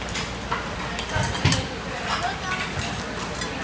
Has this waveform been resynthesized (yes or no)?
no